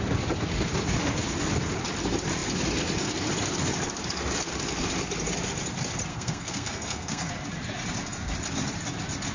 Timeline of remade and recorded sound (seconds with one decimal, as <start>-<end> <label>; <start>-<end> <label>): 0.0-6.1 recorded; 6.1-7.3 remade; 7.3-9.3 recorded